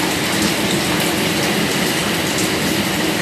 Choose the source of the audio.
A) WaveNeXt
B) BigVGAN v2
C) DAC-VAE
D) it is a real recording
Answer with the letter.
D